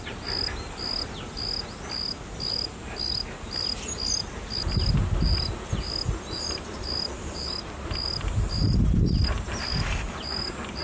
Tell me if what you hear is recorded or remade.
recorded